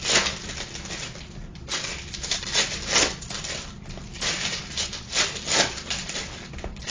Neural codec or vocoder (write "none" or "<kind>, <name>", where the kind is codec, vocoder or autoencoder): vocoder, BigVGAN v2